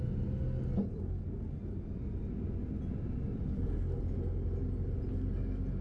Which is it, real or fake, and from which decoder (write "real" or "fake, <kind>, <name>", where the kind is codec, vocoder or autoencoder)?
real